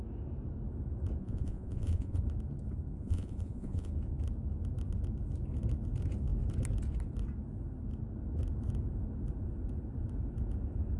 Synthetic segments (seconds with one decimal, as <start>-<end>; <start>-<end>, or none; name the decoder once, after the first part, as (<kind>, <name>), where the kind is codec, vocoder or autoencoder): 1.2-2.2 (vocoder, Vocos); 3.0-3.9